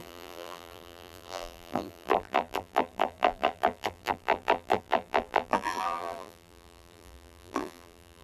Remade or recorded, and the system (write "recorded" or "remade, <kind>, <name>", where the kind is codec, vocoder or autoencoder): remade, vocoder, BigVGAN v2